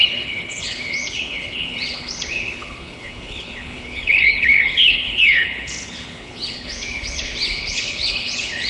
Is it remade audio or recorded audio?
remade